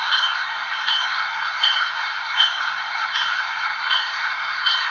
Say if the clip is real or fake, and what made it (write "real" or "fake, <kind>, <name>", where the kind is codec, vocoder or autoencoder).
fake, codec, SNAC